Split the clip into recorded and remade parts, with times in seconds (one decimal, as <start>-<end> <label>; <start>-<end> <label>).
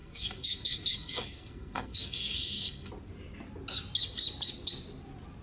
0.0-2.9 remade; 2.9-5.4 recorded